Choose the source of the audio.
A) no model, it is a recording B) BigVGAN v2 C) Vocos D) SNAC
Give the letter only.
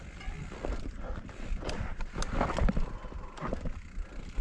A